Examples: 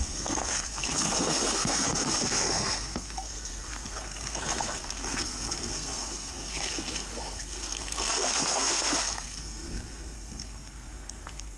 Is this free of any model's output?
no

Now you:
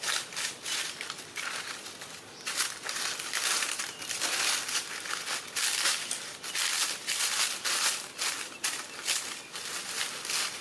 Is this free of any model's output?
yes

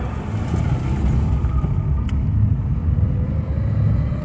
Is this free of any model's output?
yes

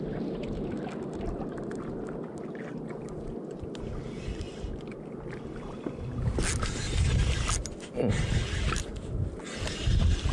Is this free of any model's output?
yes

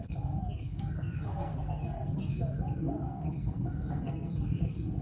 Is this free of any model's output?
no